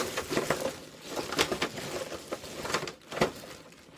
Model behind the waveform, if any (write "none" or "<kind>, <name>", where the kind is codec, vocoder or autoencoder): none